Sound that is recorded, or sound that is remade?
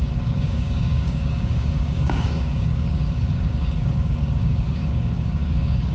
remade